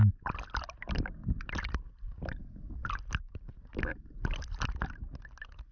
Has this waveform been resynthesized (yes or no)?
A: no